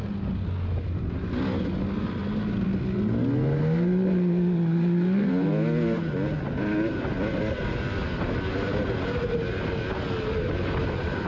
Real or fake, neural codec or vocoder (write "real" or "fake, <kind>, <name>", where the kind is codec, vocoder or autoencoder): real